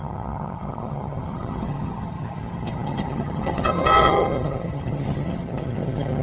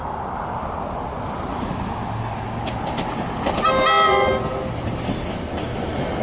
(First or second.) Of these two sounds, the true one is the second